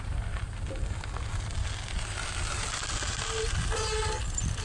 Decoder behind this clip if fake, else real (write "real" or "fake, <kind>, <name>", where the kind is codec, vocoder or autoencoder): real